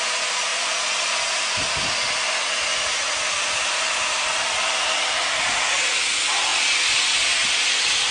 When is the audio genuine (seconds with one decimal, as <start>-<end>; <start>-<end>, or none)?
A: 0.0-8.1